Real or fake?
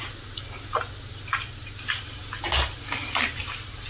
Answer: real